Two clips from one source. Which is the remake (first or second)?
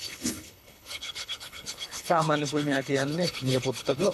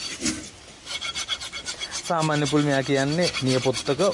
first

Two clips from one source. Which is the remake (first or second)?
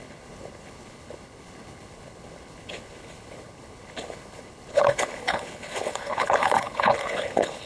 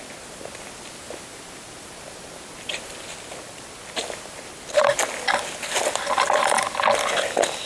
first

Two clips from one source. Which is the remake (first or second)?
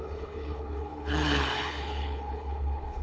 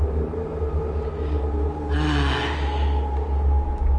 first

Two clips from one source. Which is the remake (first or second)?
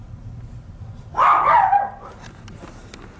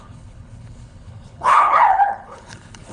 second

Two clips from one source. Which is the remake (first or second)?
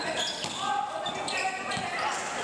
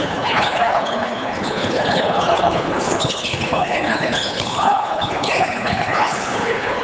second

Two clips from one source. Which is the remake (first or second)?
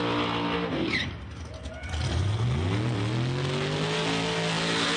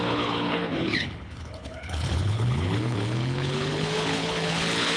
second